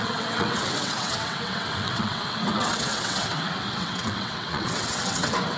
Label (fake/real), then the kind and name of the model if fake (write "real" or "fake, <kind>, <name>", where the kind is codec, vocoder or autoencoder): fake, vocoder, WaveNeXt